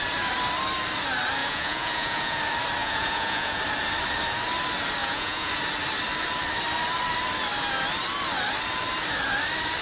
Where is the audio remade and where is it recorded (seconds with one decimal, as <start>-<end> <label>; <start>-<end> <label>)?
0.0-1.4 recorded; 1.4-2.4 remade; 2.4-2.8 recorded; 2.8-3.6 remade; 3.6-5.0 recorded; 5.0-5.5 remade; 5.5-9.8 recorded